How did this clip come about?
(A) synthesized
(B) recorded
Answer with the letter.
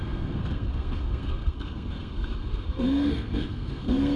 A